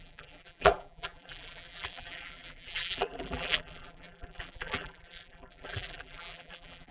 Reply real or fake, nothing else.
fake